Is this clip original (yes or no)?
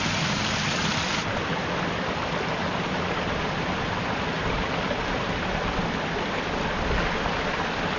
yes